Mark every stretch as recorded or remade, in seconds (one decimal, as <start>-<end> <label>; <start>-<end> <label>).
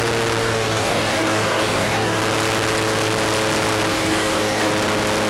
0.0-0.4 recorded; 0.4-2.2 remade; 2.2-3.9 recorded; 3.9-4.7 remade; 4.7-5.3 recorded